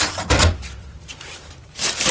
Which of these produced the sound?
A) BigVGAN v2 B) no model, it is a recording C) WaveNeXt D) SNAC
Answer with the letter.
B